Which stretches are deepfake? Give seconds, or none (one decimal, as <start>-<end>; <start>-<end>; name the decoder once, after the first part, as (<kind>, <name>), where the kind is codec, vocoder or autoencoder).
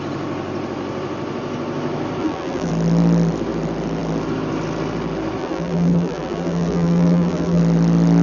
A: 2.2-2.7 (vocoder, BigVGAN v2); 5.4-7.6